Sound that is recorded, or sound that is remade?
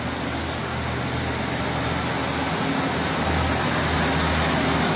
recorded